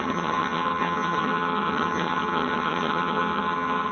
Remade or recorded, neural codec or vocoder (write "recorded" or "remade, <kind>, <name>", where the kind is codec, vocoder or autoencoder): remade, vocoder, HiFi-GAN